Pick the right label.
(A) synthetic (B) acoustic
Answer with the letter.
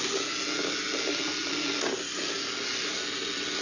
B